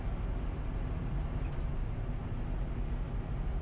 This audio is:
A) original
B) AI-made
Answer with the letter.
A